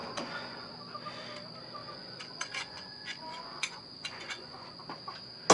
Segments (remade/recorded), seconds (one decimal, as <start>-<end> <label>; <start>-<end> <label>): 0.0-0.7 remade; 0.7-1.8 recorded; 1.8-4.8 remade; 4.8-5.5 recorded